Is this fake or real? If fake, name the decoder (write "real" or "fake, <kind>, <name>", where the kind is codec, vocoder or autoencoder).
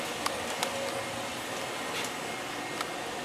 real